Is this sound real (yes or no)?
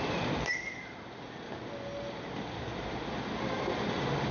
yes